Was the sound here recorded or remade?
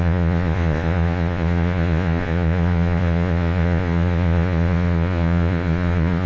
remade